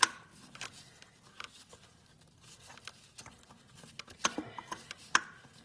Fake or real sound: real